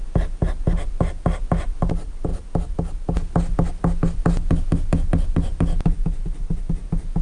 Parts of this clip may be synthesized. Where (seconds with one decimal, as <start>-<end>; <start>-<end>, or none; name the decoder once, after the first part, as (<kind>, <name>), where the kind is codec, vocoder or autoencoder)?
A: none